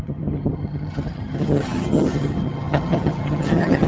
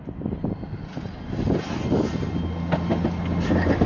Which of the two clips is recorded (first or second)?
second